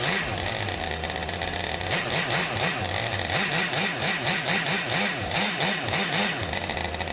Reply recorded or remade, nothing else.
recorded